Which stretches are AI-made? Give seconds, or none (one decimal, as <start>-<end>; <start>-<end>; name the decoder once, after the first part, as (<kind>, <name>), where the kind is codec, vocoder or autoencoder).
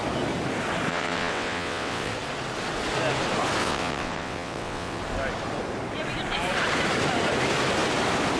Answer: 0.9-2.1 (vocoder, WaveNeXt); 3.6-5.0